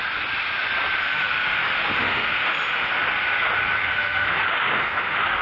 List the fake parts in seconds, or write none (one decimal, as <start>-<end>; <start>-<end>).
1.0-2.9; 3.8-5.4